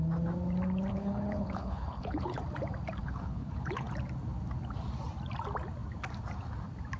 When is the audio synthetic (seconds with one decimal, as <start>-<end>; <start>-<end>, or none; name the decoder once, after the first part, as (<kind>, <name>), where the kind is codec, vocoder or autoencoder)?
0.9-2.4 (codec, HILCodec); 3.0-3.9